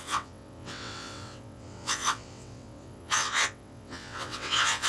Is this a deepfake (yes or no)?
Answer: yes